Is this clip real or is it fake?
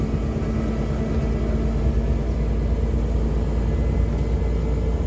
real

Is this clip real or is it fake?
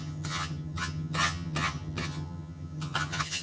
fake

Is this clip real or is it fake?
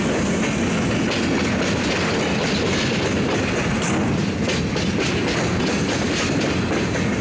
real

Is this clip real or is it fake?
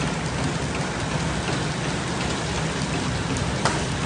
real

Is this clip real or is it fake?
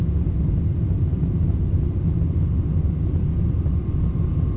real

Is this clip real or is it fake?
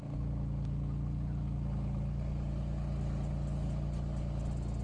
real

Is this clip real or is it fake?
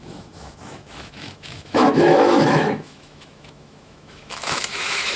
fake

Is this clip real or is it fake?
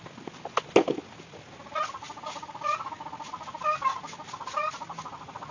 real